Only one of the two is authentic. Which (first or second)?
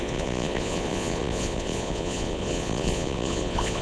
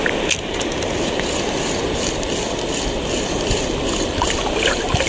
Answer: second